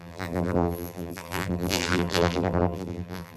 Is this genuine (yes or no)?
no